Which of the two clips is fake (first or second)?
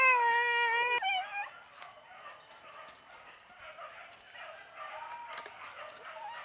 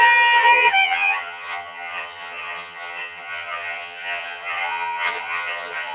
second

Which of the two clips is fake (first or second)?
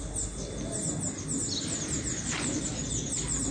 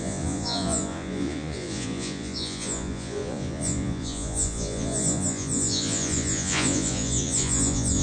second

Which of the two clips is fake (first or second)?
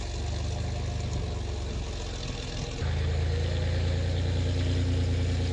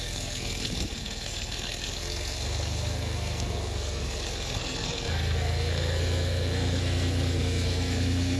second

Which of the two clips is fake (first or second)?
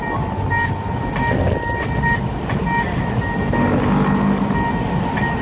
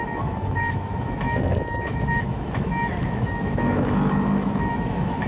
second